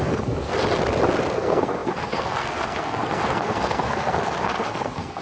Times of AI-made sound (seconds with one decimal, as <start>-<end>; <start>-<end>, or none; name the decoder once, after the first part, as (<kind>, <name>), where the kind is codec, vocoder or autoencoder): 0.0-0.5 (codec, SNAC); 1.3-5.2